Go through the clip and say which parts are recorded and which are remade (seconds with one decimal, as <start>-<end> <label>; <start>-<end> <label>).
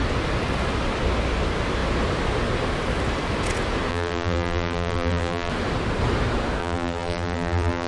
0.0-3.9 recorded; 3.9-5.5 remade; 5.5-6.6 recorded; 6.6-7.9 remade